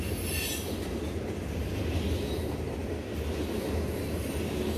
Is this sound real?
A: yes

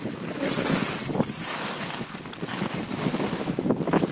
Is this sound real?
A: yes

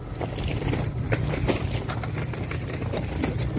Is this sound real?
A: yes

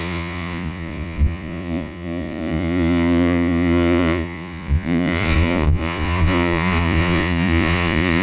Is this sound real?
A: no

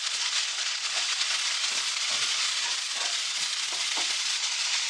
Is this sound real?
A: no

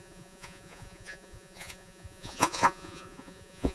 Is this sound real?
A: no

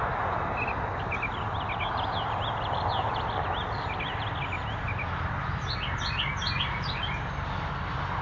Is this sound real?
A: yes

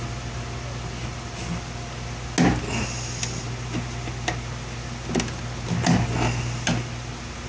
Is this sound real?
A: yes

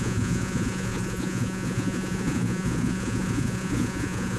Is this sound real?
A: no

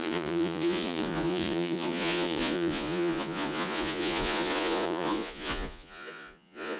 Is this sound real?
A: no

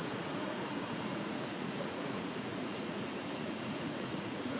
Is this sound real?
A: no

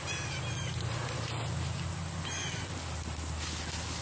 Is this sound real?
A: yes